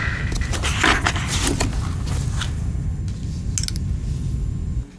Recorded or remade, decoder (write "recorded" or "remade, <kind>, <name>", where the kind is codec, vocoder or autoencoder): recorded